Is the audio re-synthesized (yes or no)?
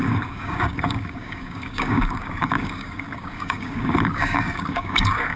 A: yes